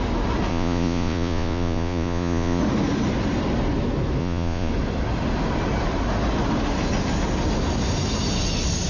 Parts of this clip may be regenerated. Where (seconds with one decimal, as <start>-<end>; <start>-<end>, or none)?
0.5-2.6; 4.2-4.7